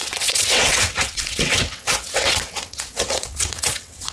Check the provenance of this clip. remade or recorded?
remade